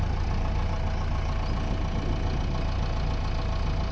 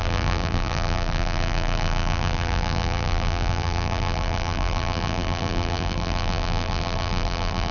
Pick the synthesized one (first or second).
second